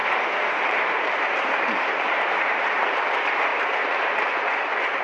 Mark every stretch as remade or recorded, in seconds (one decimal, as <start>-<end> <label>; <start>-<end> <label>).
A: 0.0-3.0 remade; 3.0-3.5 recorded; 3.5-4.1 remade; 4.1-5.0 recorded